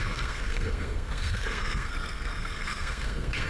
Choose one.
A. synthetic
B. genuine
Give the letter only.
A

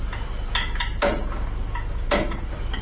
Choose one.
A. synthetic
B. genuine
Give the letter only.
B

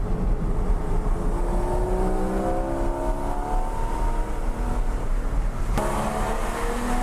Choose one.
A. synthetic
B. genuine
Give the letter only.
B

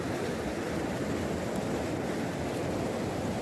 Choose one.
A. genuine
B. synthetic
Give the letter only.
A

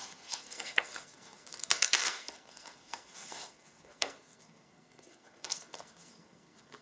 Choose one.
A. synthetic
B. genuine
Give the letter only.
A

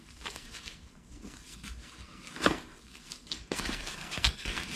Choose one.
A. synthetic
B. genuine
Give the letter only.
A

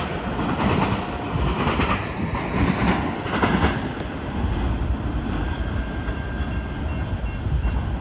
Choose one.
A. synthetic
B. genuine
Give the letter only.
B